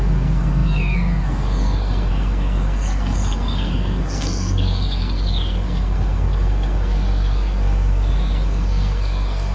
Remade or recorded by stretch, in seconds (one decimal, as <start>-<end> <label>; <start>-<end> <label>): 0.0-9.5 remade